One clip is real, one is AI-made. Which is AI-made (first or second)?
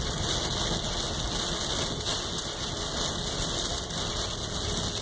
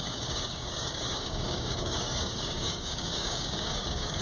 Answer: second